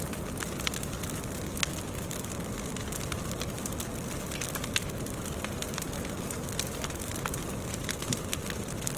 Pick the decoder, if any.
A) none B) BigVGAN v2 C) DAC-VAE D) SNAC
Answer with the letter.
A